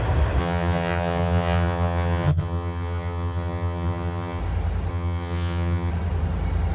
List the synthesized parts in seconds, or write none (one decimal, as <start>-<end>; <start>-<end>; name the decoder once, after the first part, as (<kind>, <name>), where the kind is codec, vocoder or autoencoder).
0.4-4.4 (vocoder, HiFi-GAN); 4.9-5.9